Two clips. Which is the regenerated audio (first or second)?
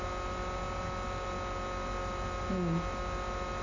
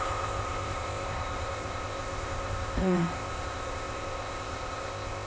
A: second